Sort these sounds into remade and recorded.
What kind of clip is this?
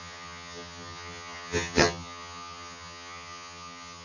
remade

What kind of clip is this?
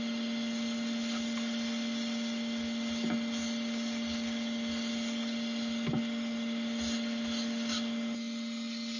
recorded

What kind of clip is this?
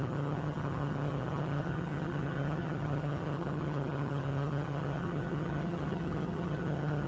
remade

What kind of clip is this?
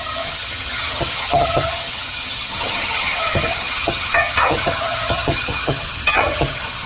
remade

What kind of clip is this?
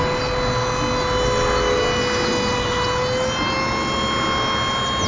recorded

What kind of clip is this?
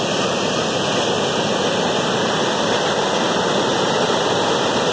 recorded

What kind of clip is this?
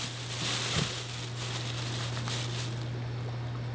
recorded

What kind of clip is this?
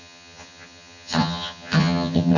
remade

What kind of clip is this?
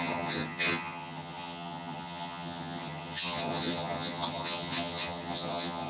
remade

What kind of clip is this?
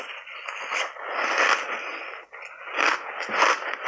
recorded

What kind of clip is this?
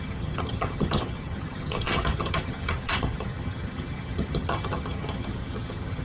remade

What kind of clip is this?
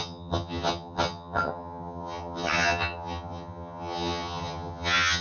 remade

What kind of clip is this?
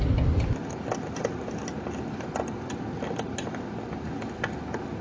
recorded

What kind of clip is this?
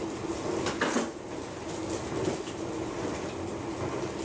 recorded